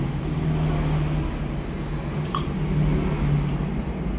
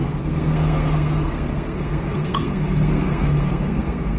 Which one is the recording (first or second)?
first